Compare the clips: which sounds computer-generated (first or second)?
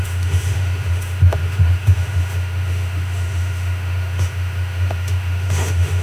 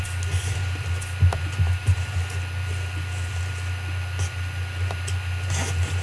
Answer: first